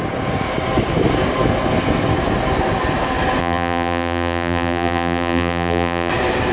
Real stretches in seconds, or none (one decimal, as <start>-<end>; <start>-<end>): 0.0-3.4; 6.1-6.5